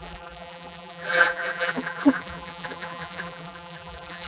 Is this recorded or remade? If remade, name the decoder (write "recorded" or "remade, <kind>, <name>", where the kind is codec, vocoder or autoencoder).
remade, vocoder, BigVGAN v2